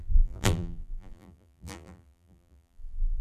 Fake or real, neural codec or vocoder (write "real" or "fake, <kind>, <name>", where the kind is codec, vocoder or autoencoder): fake, vocoder, BigVGAN v2